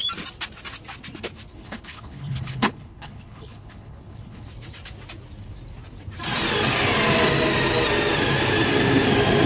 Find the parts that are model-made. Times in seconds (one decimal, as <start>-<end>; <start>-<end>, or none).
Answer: 1.5-4.5